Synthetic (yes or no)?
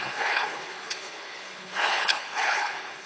yes